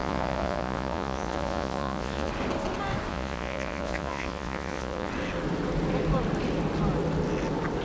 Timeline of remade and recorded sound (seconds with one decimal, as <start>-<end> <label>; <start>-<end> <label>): 0.0-2.3 remade; 2.3-3.1 recorded; 3.1-5.1 remade; 5.1-7.8 recorded